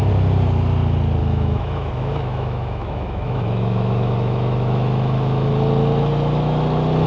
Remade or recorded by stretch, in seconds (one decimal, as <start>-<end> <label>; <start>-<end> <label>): 0.0-1.2 recorded; 1.2-5.5 remade; 5.5-7.1 recorded